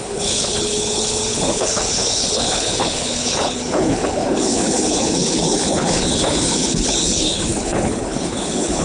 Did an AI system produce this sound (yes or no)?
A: yes